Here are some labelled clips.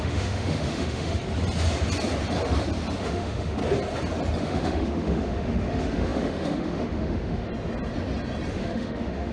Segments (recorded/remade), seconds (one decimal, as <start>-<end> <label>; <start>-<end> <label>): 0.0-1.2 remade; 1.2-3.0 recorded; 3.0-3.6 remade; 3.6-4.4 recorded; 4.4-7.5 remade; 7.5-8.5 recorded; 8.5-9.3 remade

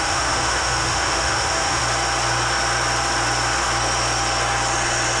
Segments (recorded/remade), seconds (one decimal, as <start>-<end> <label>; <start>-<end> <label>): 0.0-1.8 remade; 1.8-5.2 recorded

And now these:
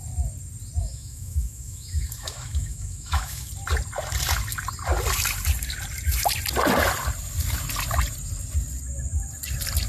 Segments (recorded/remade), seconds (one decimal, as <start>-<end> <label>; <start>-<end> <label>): 0.0-0.8 recorded; 0.8-3.5 remade; 3.5-9.9 recorded

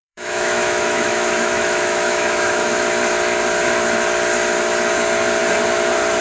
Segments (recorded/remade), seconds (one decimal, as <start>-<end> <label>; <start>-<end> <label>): 0.0-2.7 remade; 2.7-6.2 recorded